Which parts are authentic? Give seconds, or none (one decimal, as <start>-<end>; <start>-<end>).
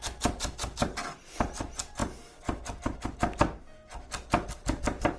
0.0-5.2